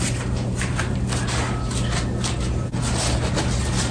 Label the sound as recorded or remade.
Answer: recorded